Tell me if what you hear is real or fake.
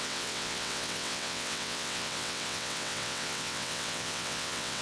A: fake